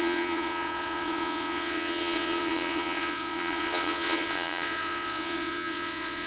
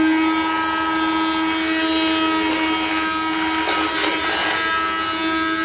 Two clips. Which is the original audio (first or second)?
second